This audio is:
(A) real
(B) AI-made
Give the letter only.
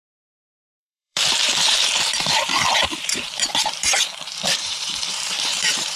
B